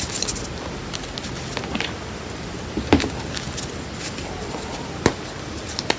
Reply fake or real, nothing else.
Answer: real